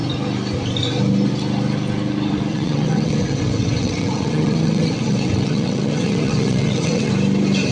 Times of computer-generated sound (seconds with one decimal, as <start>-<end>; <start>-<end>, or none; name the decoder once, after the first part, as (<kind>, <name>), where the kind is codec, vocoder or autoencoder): 2.5-7.1 (vocoder, WaveNeXt)